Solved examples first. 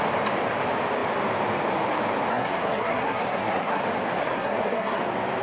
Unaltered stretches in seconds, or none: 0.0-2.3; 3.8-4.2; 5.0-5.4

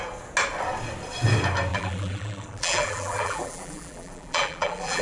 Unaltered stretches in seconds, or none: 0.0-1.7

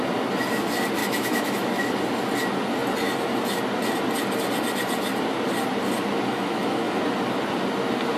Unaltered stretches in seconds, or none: 0.0-1.0; 1.8-6.3; 7.0-8.2

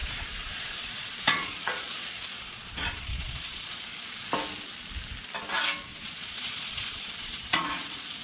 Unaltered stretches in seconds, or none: 4.3-5.9

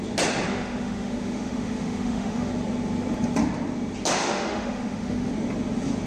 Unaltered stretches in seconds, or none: 0.0-0.5; 2.5-4.2; 5.3-6.1